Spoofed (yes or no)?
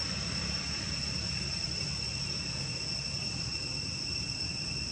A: yes